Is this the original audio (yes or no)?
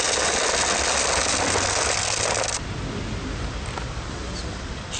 yes